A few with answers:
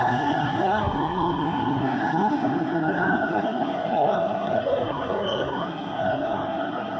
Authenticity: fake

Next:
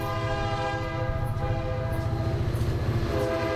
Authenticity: real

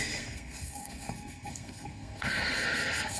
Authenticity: fake